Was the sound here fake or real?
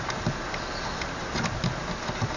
real